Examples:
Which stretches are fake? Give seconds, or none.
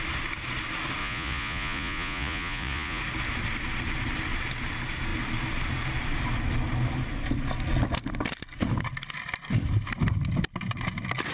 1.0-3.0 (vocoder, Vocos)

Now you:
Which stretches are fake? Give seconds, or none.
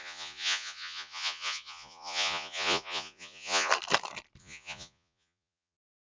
0.0-3.7 (vocoder, Vocos); 4.4-6.1